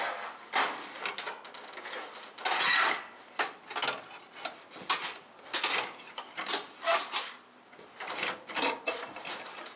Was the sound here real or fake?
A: real